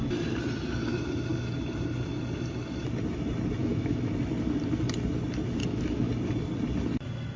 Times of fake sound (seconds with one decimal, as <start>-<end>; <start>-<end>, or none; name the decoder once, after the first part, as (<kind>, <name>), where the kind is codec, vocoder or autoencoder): 3.6-4.1 (autoencoder, DAC-VAE); 5.6-6.1